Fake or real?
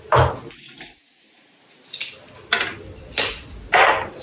real